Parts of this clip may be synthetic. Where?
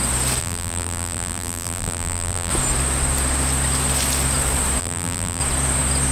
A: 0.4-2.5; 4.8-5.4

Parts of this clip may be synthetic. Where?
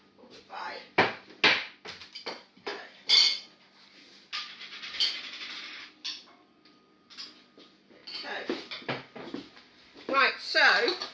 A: none